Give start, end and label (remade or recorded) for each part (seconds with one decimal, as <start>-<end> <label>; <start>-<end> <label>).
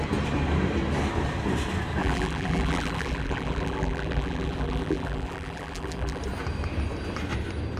0.0-2.0 recorded; 2.0-6.2 remade; 6.2-7.8 recorded